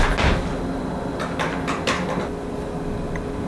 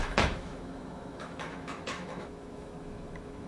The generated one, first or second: second